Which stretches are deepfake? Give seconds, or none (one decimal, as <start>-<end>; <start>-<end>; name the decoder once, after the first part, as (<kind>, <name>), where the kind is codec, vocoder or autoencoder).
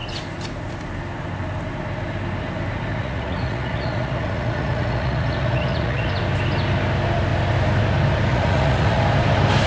2.9-6.1 (vocoder, Vocos); 8.3-9.0